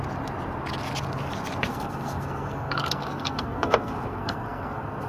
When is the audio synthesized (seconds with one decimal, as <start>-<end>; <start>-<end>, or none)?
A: 1.7-5.1